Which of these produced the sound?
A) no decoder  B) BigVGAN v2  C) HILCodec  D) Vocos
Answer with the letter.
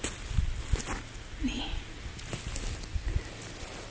A